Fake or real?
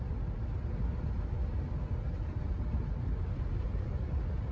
real